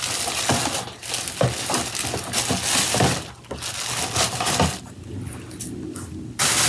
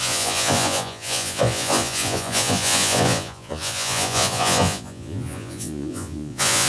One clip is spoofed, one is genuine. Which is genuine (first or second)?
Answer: first